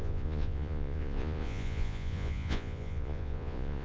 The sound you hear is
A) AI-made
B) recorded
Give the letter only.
A